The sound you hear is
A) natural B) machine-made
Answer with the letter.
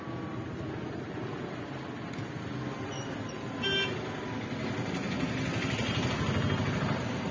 A